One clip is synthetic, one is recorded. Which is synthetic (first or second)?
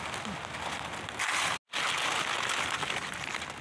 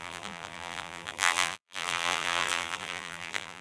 second